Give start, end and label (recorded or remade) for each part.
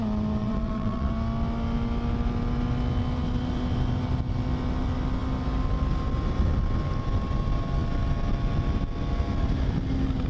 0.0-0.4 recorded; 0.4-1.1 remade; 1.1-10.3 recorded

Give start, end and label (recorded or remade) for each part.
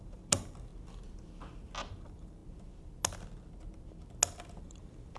0.0-0.7 remade; 0.7-1.9 recorded; 1.9-2.4 remade; 2.4-4.6 recorded; 4.6-5.2 remade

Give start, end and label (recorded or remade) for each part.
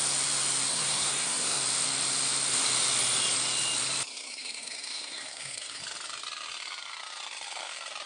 0.0-0.7 recorded; 0.7-1.6 remade; 1.6-4.1 recorded; 4.1-5.8 remade; 5.8-8.1 recorded